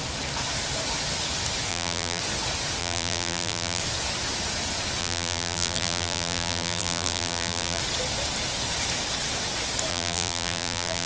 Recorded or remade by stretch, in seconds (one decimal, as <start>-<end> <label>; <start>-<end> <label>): 0.0-1.7 recorded; 1.7-2.2 remade; 2.2-2.8 recorded; 2.8-3.8 remade; 3.8-5.0 recorded; 5.0-7.8 remade; 7.8-9.9 recorded; 9.9-11.1 remade